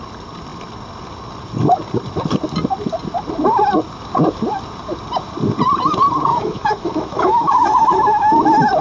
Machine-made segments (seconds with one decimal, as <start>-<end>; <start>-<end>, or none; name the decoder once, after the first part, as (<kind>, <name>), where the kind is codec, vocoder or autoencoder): 6.3-8.3 (autoencoder, DAC-VAE)